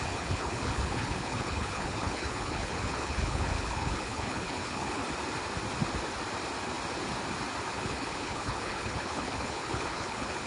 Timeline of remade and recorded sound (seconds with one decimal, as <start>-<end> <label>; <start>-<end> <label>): 0.0-5.0 remade; 5.0-7.7 recorded; 7.7-10.5 remade